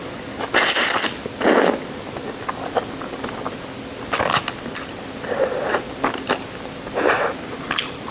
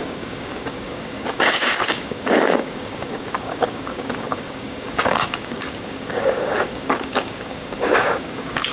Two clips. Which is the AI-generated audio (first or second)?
second